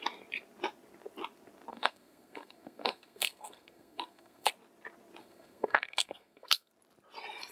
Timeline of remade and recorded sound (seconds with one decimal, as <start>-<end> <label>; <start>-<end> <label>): 0.0-1.7 recorded; 1.7-4.5 remade; 4.5-5.2 recorded; 5.2-6.7 remade; 6.7-7.5 recorded